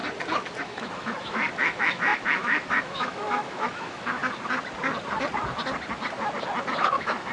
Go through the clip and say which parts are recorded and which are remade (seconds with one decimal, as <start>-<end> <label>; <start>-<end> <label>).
0.0-0.6 recorded; 0.6-4.2 remade; 4.2-6.8 recorded; 6.8-7.3 remade